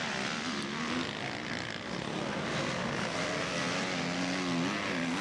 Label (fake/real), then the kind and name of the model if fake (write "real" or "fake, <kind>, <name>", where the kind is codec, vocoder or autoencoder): real